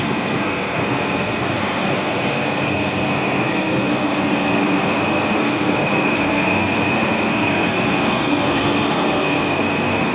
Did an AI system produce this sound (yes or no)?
yes